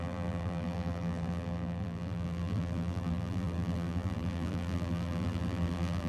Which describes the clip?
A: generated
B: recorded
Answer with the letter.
A